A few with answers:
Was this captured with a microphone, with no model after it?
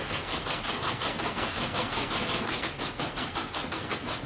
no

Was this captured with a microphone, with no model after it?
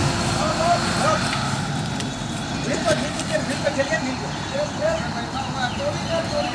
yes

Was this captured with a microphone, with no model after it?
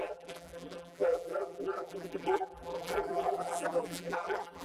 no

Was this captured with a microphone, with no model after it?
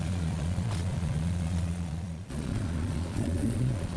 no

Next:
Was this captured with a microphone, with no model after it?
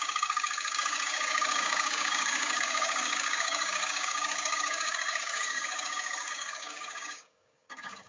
no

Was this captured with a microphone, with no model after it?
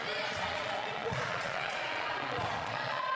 no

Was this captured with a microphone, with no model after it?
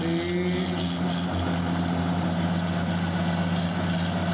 yes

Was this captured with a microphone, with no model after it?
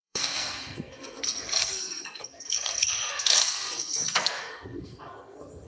no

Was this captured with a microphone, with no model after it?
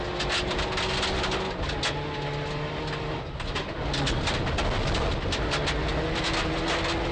yes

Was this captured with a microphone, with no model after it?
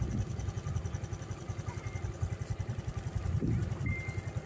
yes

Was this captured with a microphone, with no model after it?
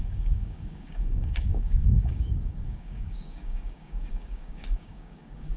no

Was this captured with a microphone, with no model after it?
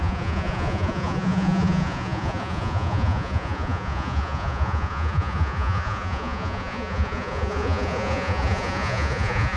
no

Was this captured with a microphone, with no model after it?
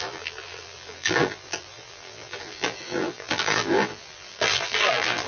no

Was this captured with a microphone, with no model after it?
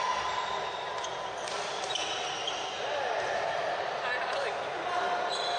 yes